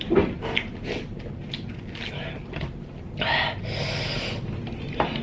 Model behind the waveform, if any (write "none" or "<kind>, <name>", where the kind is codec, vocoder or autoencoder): none